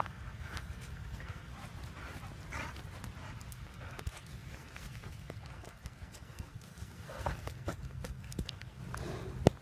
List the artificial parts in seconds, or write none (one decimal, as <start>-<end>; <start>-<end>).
0.0-1.5; 3.5-8.8